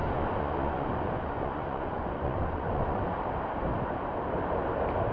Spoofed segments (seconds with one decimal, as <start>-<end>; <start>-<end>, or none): 0.0-3.1